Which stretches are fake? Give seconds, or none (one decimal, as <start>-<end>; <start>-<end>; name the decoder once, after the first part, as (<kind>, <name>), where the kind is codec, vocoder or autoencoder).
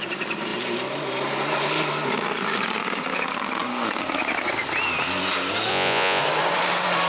5.7-6.2 (vocoder, Vocos)